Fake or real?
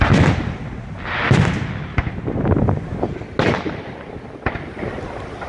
real